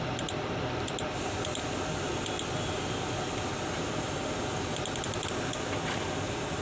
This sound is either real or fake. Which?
real